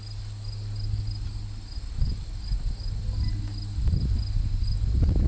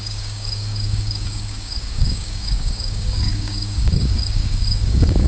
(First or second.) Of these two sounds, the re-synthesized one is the second